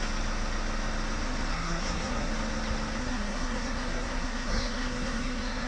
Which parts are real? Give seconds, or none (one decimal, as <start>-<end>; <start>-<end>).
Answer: 0.0-1.5; 2.3-3.0